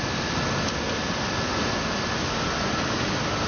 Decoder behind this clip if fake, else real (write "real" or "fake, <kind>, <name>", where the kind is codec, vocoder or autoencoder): real